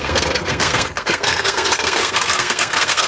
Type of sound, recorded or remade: remade